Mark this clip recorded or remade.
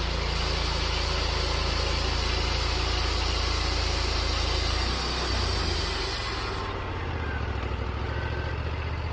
recorded